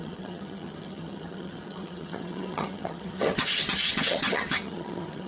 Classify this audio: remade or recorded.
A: remade